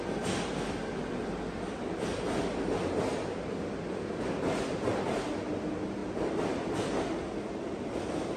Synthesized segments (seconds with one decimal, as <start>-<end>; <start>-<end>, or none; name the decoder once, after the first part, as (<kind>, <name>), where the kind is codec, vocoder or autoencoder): none